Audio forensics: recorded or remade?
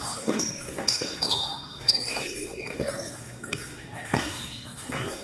remade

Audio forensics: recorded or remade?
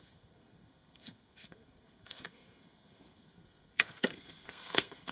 remade